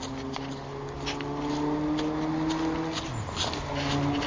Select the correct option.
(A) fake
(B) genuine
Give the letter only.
B